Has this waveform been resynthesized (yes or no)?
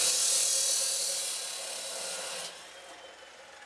no